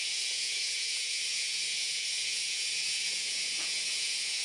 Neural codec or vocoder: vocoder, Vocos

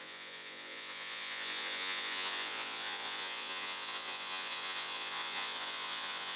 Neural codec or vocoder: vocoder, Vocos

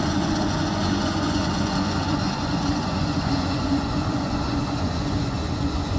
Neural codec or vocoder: vocoder, Vocos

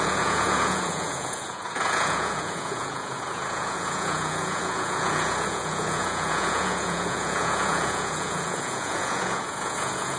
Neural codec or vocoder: vocoder, Vocos